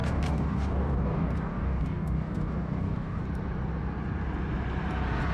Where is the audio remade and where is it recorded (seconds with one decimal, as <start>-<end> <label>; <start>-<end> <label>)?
0.0-3.2 remade; 3.2-5.3 recorded